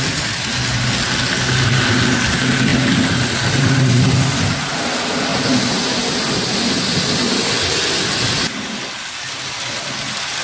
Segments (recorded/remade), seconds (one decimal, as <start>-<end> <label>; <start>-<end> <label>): 0.0-10.4 recorded